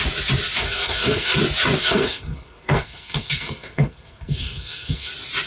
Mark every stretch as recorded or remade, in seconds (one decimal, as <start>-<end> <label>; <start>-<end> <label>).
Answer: 0.0-0.6 recorded; 0.6-1.4 remade; 1.4-1.8 recorded; 1.8-5.1 remade; 5.1-5.5 recorded